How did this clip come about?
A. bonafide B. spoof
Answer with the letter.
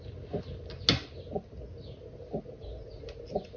A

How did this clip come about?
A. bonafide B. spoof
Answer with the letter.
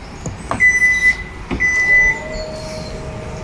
A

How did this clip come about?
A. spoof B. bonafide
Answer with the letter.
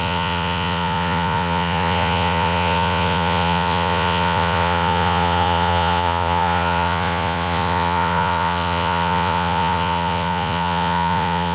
A